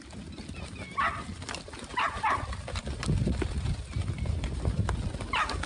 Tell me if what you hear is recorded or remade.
recorded